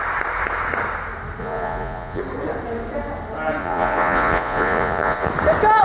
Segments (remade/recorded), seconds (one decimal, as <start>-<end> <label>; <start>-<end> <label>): 0.0-1.4 recorded; 1.4-2.2 remade; 2.2-3.6 recorded; 3.6-5.3 remade; 5.3-5.8 recorded